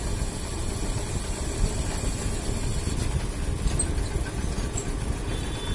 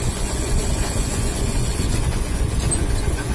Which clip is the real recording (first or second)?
first